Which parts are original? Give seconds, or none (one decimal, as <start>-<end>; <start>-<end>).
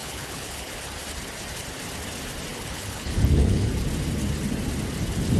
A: 0.8-2.5; 3.7-5.4